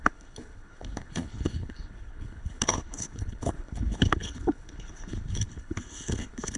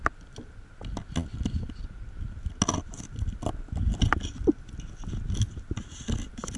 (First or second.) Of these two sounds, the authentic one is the second